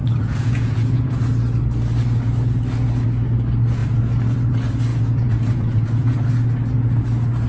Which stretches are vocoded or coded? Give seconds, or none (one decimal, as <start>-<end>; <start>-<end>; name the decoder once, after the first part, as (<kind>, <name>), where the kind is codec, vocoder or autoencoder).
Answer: 0.0-1.1 (vocoder, Vocos); 4.9-6.3